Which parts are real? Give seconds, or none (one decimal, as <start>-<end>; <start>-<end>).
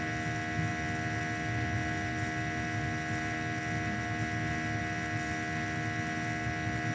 0.0-6.9